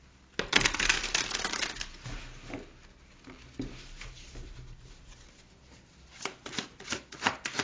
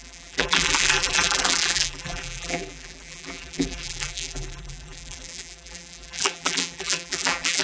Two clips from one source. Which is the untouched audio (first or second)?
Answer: first